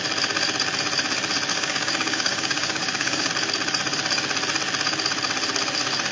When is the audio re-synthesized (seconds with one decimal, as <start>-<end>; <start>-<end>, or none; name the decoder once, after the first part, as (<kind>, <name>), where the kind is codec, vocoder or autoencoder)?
1.5-3.3 (codec, DAC)